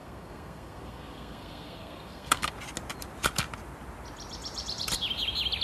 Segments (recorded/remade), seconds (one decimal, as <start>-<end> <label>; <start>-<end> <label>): 0.0-2.5 remade; 2.5-5.6 recorded